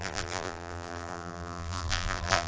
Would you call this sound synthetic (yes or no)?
yes